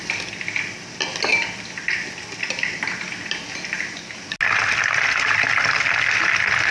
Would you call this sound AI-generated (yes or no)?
no